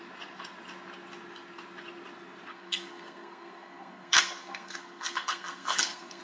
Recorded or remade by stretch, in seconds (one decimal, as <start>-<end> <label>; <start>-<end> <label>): 0.0-2.5 recorded; 2.5-6.2 remade